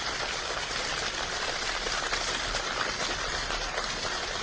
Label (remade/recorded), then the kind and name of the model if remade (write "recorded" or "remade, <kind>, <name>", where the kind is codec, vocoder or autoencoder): recorded